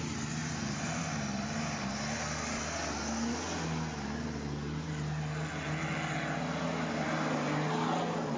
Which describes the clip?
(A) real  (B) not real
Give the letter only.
A